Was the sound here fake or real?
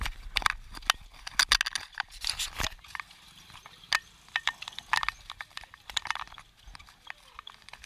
real